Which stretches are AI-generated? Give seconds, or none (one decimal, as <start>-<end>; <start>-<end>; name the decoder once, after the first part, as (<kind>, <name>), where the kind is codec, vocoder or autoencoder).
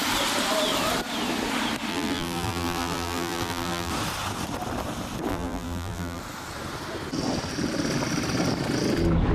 1.9-3.9 (vocoder, BigVGAN v2); 5.3-6.2